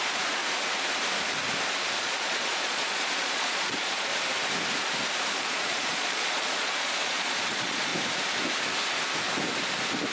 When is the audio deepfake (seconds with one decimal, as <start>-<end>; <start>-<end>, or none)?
0.0-0.4; 2.0-4.1; 5.3-7.9